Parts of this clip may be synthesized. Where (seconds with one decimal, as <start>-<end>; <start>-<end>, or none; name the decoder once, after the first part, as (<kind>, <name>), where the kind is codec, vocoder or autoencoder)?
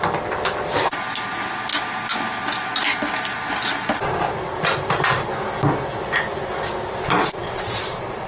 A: 7.2-8.3 (vocoder, Vocos)